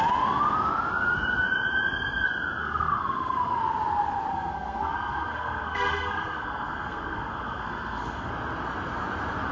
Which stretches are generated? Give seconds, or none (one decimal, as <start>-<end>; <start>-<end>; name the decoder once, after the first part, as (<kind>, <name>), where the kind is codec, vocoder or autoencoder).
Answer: 2.6-3.6 (codec, SNAC); 4.3-8.3